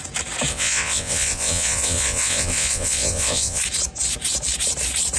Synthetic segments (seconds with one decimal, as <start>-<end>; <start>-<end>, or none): 0.5-3.6